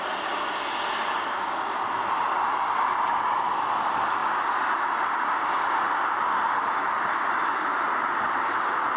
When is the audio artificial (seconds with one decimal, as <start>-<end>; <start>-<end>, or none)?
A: none